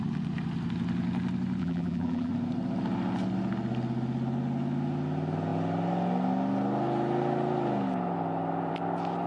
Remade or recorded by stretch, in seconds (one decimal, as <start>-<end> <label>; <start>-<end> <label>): 0.0-1.6 recorded; 1.6-2.3 remade; 2.3-9.3 recorded